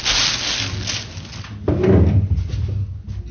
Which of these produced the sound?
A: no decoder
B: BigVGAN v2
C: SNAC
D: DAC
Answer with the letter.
A